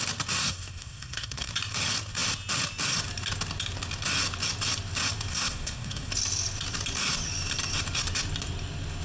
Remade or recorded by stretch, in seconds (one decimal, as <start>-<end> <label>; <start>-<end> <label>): 0.0-0.4 recorded; 0.4-1.5 remade; 1.5-5.3 recorded; 5.3-6.1 remade; 6.1-9.0 recorded